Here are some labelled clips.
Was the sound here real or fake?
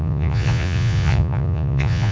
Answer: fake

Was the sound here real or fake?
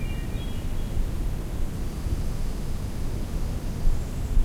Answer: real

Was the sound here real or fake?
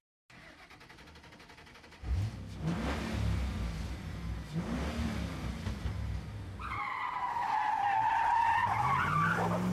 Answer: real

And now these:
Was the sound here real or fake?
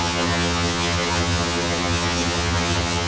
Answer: fake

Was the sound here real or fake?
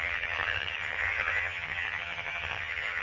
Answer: fake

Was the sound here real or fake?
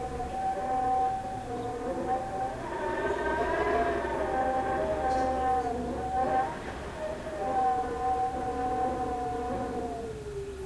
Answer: real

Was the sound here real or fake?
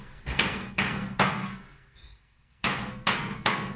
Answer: fake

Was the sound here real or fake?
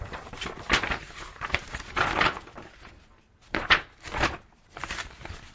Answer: fake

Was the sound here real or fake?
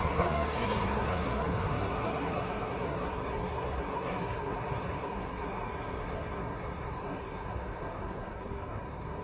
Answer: fake